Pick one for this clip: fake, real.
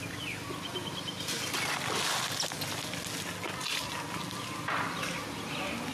real